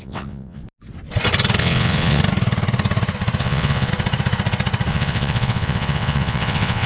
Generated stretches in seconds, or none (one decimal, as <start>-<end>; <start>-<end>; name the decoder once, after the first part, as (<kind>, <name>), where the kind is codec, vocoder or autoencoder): 0.0-0.6 (vocoder, WaveNeXt); 1.6-2.2; 3.4-3.9; 4.9-6.9